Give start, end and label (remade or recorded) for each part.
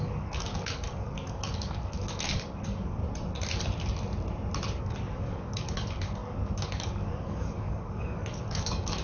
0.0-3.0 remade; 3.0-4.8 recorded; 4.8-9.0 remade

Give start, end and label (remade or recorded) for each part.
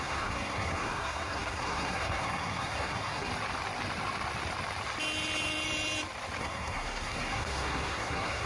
0.0-3.3 remade; 3.3-6.4 recorded; 6.4-8.5 remade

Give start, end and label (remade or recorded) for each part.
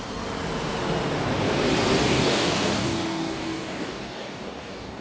0.0-2.0 recorded; 2.0-5.0 remade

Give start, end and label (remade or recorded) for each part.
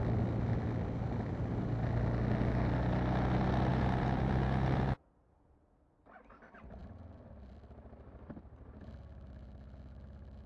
0.0-3.7 recorded; 3.7-6.0 remade; 6.0-10.5 recorded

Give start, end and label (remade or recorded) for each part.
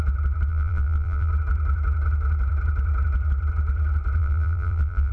0.0-0.5 recorded; 0.5-1.3 remade; 1.3-4.2 recorded; 4.2-5.1 remade